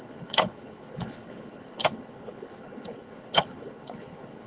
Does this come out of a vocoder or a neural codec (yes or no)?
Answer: yes